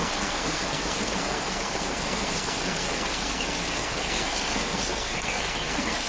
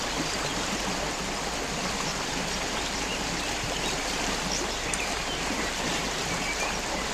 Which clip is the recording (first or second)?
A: second